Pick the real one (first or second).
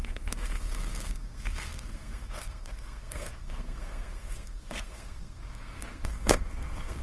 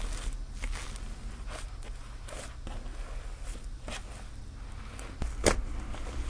second